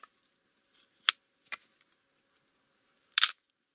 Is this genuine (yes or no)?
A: yes